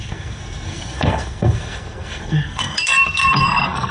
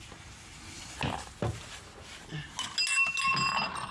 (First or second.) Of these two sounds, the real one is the second